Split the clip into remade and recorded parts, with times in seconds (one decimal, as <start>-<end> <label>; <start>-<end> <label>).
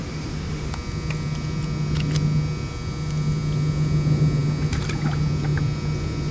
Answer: 0.0-0.7 remade; 0.7-6.3 recorded